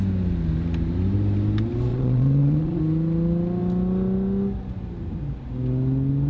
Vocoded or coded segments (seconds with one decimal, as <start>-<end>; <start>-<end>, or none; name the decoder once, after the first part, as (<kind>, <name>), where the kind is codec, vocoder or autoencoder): 1.9-2.8 (vocoder, Vocos)